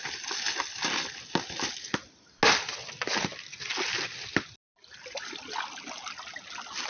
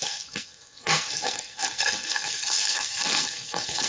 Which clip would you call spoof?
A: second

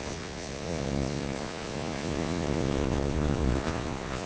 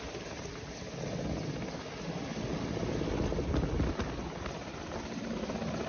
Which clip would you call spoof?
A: first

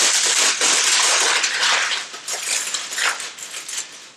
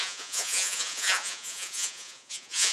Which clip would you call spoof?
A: second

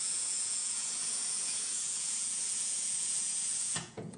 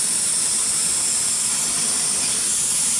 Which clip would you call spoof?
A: first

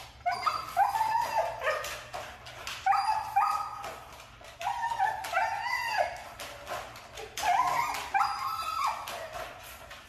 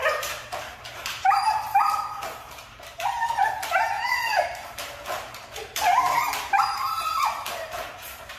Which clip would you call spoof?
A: second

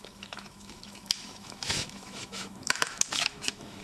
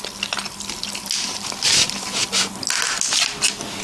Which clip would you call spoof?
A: first